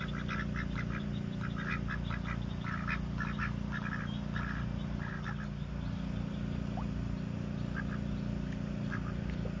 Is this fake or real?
real